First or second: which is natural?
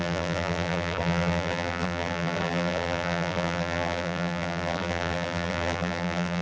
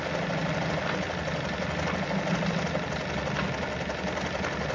second